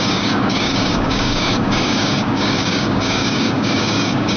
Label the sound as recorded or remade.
remade